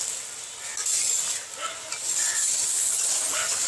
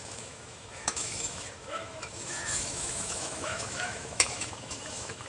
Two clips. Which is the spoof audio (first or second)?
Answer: second